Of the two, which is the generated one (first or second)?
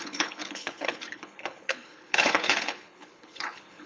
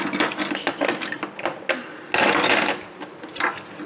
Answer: first